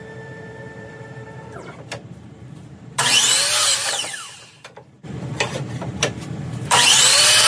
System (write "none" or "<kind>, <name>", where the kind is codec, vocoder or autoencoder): vocoder, BigVGAN v2